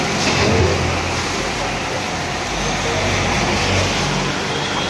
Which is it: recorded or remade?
recorded